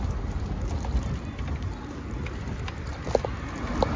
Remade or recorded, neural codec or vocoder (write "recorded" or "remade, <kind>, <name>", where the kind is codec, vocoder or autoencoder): recorded